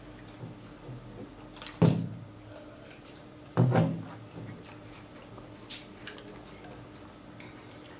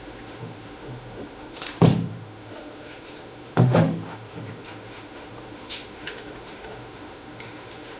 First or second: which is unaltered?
first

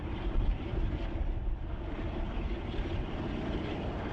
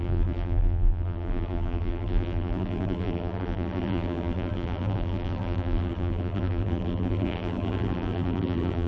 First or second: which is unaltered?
first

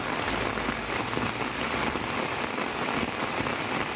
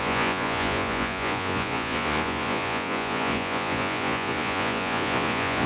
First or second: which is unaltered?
first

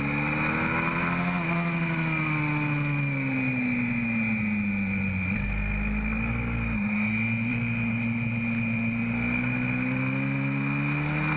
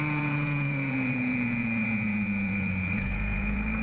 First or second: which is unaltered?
first